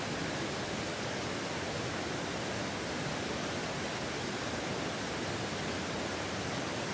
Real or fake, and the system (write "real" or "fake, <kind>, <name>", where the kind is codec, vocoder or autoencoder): real